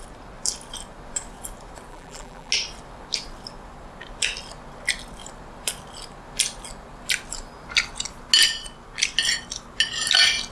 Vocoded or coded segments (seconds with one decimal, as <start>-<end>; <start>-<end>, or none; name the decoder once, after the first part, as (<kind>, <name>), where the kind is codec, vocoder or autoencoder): 1.9-2.5 (vocoder, BigVGAN v2)